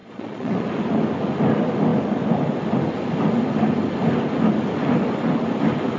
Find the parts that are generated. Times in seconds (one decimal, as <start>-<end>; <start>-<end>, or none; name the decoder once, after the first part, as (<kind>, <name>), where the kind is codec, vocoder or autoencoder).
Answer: 0.0-0.7 (vocoder, Vocos)